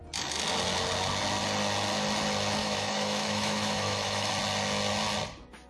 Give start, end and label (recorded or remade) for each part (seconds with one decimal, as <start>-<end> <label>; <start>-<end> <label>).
0.0-2.6 recorded; 2.6-4.3 remade; 4.3-5.7 recorded